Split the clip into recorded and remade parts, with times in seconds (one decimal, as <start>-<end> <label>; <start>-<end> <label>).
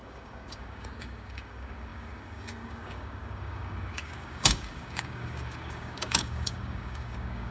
0.0-7.5 remade